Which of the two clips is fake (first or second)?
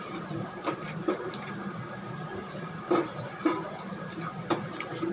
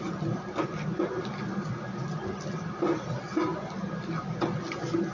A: first